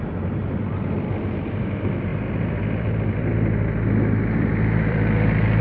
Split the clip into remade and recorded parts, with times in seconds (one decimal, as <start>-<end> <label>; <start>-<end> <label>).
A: 0.0-0.6 recorded; 0.6-1.2 remade; 1.2-2.1 recorded; 2.1-5.6 remade